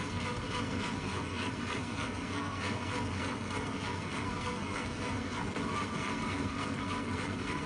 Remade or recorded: remade